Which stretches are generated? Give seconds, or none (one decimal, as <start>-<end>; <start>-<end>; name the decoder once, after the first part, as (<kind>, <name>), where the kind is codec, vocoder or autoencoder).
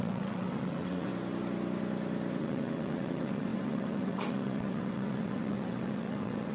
0.0-1.1 (vocoder, WaveNeXt); 2.4-6.5